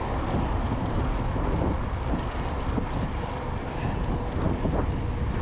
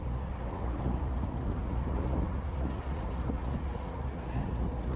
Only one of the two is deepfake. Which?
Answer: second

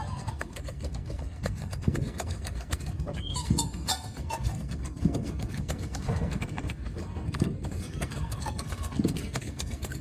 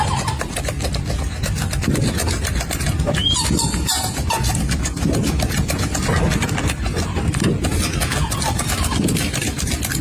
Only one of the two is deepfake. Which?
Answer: first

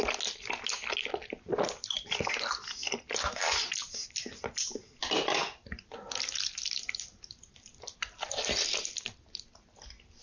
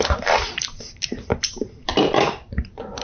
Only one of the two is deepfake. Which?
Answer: second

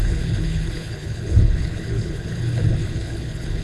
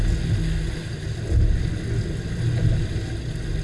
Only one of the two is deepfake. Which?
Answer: first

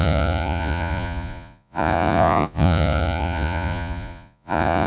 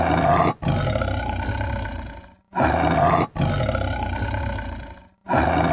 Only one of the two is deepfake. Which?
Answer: first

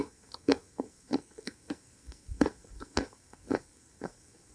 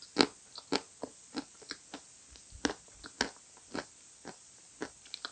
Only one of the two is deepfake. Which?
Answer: first